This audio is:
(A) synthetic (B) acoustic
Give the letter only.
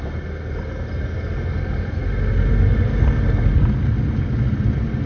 B